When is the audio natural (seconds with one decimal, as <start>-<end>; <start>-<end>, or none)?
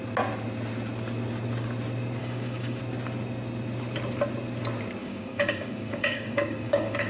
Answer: 0.0-2.2; 2.8-5.0